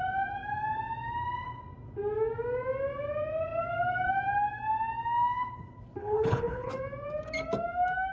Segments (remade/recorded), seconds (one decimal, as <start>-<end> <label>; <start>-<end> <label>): 0.0-6.0 recorded; 6.0-6.7 remade; 6.7-8.1 recorded